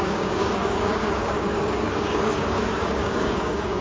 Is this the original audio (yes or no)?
no